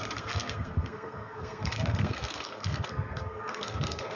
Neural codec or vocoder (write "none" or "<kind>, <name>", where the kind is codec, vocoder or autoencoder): codec, SNAC